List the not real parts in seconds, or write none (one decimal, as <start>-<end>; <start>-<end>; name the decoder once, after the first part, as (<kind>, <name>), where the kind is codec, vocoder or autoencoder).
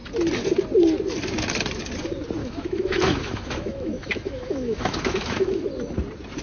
2.4-5.6 (autoencoder, DAC-VAE)